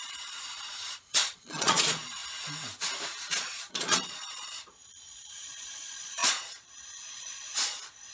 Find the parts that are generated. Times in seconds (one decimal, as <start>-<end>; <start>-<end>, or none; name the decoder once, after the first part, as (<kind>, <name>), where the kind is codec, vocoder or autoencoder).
0.0-2.2 (vocoder, Vocos); 3.3-8.1